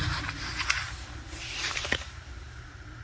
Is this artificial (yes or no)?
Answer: yes